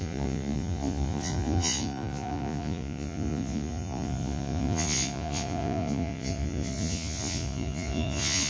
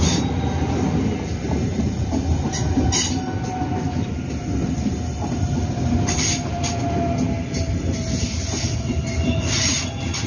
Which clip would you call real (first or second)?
second